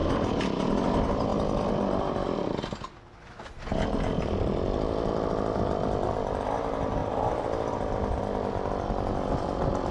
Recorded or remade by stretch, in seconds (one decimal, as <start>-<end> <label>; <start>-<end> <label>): 0.0-0.7 remade; 0.7-7.0 recorded; 7.0-8.2 remade; 8.2-9.9 recorded